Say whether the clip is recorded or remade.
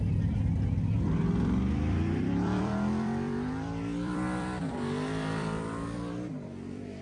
remade